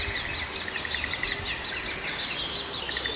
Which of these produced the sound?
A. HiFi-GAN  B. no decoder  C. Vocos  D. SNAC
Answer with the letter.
B